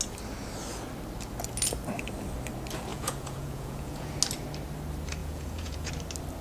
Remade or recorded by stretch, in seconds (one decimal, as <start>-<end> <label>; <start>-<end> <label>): 0.0-2.9 recorded; 2.9-4.2 remade; 4.2-5.2 recorded; 5.2-5.9 remade; 5.9-6.4 recorded